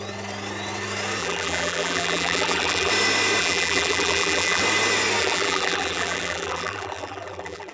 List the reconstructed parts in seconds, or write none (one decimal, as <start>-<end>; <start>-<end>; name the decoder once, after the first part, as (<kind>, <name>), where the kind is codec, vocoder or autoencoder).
1.2-2.9 (vocoder, BigVGAN v2); 3.4-4.6; 5.2-7.7